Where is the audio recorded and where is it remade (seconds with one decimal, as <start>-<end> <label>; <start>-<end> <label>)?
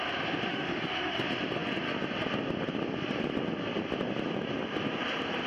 0.0-0.5 recorded; 0.5-1.2 remade; 1.2-5.5 recorded